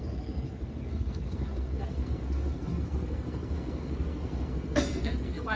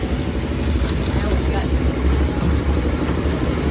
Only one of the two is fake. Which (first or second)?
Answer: first